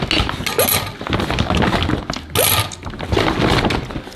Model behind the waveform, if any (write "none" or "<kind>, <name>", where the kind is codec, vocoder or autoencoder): none